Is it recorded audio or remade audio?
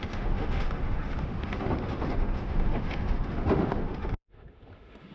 remade